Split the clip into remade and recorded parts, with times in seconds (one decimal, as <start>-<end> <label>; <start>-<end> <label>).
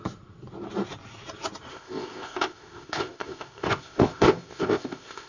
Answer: 0.0-1.7 recorded; 1.7-5.3 remade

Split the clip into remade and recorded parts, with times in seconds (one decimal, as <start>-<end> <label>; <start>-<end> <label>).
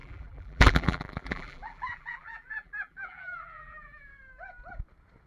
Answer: 0.0-4.1 remade; 4.1-5.3 recorded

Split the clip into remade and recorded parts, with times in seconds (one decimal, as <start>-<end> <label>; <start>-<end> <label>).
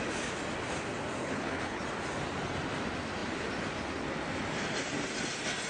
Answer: 0.0-1.2 recorded; 1.2-1.8 remade; 1.8-5.7 recorded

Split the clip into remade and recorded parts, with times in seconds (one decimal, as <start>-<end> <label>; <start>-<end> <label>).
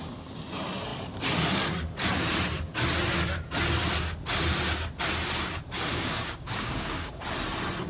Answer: 0.0-5.9 recorded; 5.9-7.1 remade; 7.1-7.9 recorded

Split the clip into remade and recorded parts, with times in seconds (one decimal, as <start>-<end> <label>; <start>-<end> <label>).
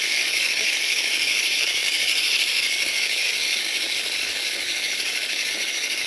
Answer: 0.0-6.1 remade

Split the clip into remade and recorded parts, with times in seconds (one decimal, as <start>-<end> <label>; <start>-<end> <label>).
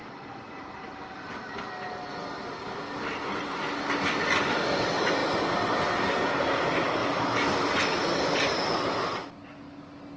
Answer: 0.0-1.6 remade; 1.6-7.0 recorded; 7.0-8.8 remade; 8.8-10.2 recorded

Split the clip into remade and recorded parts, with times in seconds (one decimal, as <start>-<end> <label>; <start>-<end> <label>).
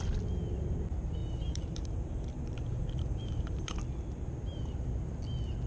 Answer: 0.0-1.2 recorded; 1.2-3.8 remade; 3.8-5.7 recorded